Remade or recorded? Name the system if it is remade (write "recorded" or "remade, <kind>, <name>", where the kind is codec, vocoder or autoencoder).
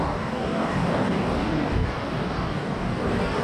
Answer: remade, codec, DAC